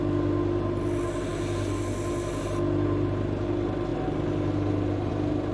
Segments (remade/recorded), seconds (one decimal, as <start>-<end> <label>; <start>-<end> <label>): 0.0-5.5 recorded